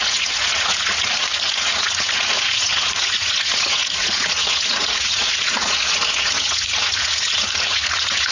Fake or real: fake